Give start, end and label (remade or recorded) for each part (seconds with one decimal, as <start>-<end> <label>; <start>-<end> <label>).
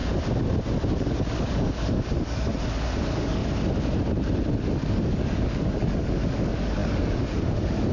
0.0-0.9 recorded; 0.9-2.5 remade; 2.5-3.0 recorded; 3.0-3.4 remade; 3.4-4.7 recorded; 4.7-7.9 remade